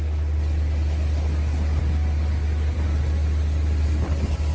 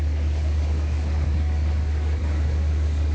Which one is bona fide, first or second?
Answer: first